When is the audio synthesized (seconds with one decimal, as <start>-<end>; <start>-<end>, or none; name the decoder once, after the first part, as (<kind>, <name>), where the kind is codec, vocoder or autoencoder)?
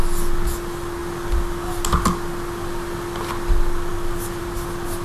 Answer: none